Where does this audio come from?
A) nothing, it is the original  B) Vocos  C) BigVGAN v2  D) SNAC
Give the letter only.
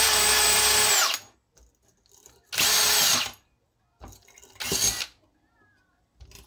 A